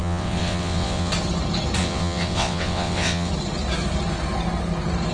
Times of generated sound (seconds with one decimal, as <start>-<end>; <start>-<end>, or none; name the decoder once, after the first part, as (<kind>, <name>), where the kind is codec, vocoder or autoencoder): 0.0-1.1 (vocoder, WaveNeXt); 1.8-3.3